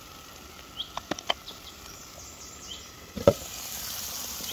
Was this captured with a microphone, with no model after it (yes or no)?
yes